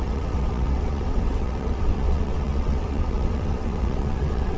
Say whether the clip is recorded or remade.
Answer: remade